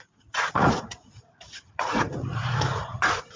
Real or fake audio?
fake